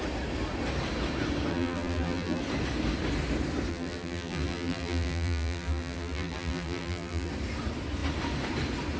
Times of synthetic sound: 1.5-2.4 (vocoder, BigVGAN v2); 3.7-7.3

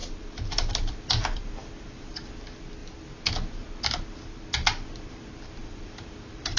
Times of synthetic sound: 0.0-2.3 (vocoder, BigVGAN v2); 5.6-6.6

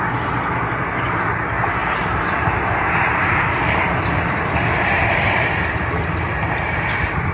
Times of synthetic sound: 0.0-7.3 (vocoder, BigVGAN v2)

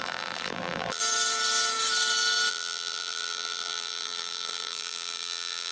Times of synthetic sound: 0.0-1.0 (vocoder, BigVGAN v2); 2.5-5.7

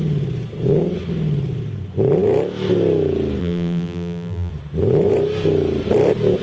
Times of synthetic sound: 3.4-4.5 (vocoder, BigVGAN v2)